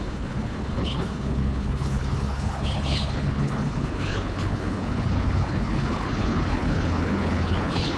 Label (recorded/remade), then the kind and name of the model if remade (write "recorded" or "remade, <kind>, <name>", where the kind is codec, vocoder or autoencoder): remade, codec, HILCodec